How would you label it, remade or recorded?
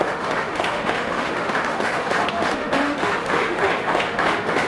remade